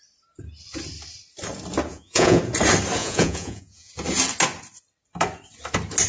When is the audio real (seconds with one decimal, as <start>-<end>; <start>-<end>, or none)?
0.0-1.9; 2.4-3.0; 3.9-6.1